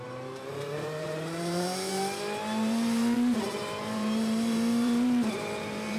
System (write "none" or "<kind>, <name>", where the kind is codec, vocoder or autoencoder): vocoder, BigVGAN v2